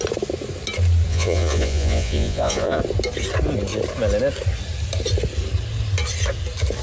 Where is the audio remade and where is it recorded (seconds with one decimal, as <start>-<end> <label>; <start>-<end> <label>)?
0.0-1.1 recorded; 1.1-2.8 remade; 2.8-6.8 recorded